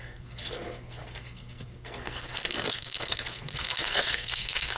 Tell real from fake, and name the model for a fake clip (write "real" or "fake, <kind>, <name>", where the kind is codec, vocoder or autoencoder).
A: fake, codec, SNAC